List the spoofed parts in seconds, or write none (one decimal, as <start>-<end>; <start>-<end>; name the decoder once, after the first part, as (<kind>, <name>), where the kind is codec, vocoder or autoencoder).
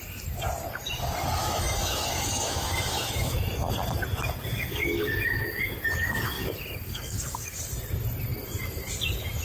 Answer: 1.4-3.5 (autoencoder, DAC-VAE)